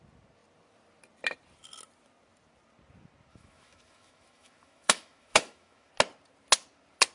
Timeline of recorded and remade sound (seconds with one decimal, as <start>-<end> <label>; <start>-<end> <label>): 0.0-3.3 recorded; 3.3-5.9 remade; 5.9-7.1 recorded